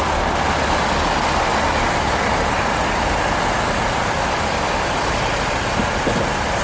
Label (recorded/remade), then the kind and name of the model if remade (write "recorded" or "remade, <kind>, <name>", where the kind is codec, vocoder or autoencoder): recorded